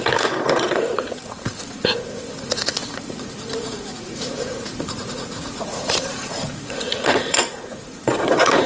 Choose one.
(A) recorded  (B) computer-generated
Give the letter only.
B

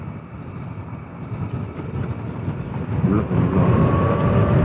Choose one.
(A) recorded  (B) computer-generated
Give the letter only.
A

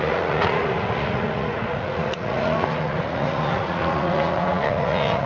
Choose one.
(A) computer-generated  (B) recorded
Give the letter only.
A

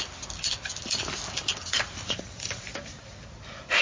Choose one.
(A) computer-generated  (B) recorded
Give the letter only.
B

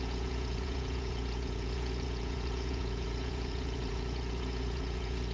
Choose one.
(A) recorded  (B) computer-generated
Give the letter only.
B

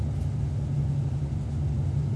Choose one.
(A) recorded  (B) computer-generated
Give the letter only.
A